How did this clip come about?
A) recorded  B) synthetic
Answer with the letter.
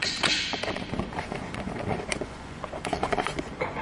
B